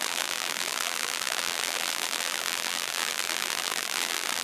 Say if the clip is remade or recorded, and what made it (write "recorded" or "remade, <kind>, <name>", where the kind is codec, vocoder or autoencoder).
remade, vocoder, BigVGAN v2